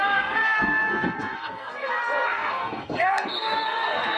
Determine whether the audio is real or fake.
fake